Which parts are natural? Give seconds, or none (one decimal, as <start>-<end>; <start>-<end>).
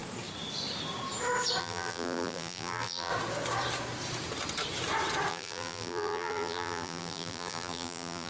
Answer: 0.0-1.6; 3.1-5.3